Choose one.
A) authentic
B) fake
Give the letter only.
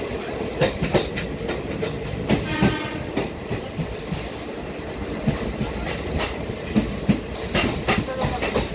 A